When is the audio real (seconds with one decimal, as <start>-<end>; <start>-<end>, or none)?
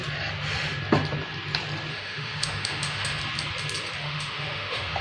0.0-1.9; 3.2-4.0